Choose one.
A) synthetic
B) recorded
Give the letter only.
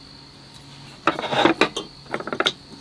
B